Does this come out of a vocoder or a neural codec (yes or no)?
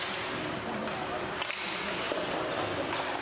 no